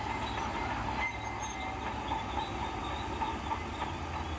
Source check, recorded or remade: recorded